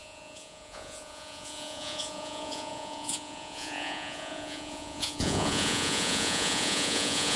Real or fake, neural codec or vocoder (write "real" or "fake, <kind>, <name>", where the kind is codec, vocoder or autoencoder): fake, vocoder, Vocos